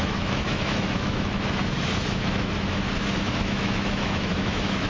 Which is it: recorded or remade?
remade